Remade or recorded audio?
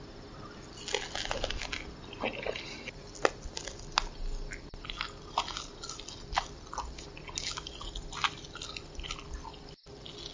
recorded